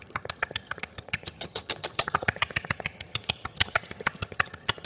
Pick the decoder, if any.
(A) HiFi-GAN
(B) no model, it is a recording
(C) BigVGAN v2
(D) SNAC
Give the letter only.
A